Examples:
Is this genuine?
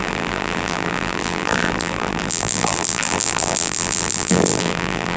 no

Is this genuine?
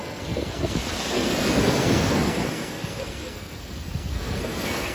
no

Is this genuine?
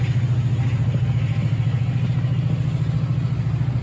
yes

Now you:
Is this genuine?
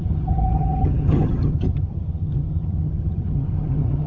no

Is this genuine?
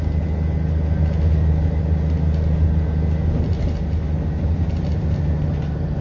yes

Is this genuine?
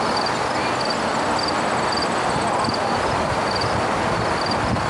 yes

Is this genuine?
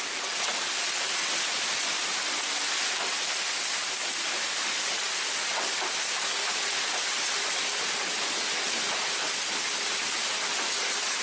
yes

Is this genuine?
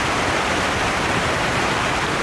no